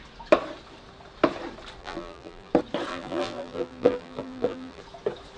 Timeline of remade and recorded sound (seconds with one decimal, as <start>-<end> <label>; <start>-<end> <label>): 0.0-1.8 recorded; 1.8-2.5 remade; 2.5-2.9 recorded; 2.9-4.8 remade; 4.8-5.4 recorded